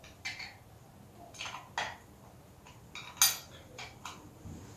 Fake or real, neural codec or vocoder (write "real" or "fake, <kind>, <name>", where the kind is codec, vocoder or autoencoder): real